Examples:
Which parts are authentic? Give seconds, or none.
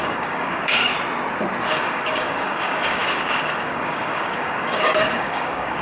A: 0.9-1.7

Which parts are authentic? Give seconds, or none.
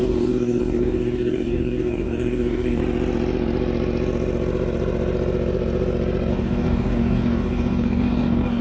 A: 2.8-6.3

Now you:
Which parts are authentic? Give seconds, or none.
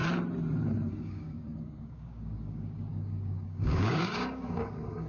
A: 0.0-0.9